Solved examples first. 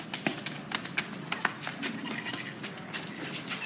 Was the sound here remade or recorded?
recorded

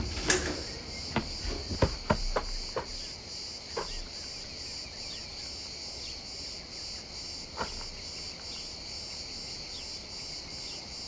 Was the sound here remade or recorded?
recorded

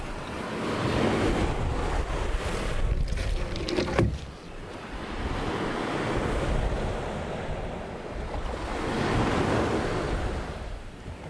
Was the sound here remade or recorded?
recorded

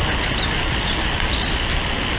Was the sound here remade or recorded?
recorded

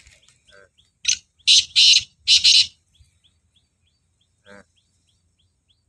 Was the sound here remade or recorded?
recorded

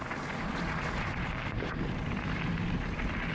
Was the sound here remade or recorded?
recorded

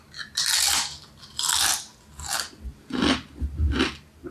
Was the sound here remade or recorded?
recorded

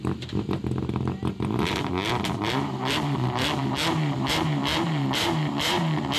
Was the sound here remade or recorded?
remade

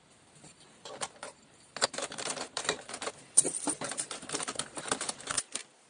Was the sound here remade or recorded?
remade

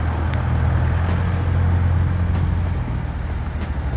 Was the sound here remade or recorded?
recorded